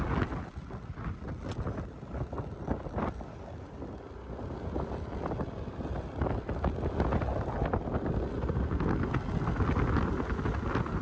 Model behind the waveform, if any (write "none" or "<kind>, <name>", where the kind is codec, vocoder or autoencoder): none